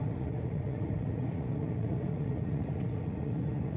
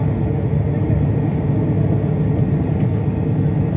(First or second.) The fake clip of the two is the first